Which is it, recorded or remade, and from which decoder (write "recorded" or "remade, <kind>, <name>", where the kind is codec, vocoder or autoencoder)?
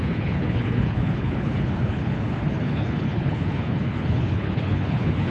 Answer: remade, codec, HILCodec